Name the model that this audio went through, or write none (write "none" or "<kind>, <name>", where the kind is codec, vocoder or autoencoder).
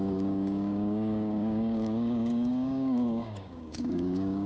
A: codec, DAC